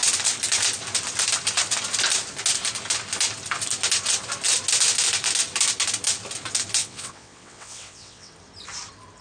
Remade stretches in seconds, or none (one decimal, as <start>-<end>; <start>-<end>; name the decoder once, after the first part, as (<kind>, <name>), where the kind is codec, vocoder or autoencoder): 6.8-8.3 (vocoder, WaveNeXt)